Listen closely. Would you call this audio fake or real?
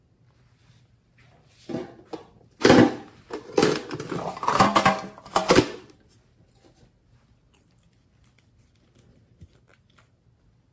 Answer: real